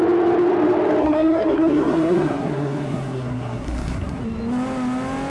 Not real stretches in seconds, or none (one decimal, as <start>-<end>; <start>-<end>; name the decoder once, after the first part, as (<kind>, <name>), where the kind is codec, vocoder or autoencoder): 1.0-4.2 (codec, SNAC)